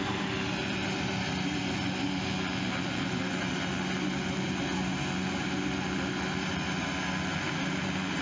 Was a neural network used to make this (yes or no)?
no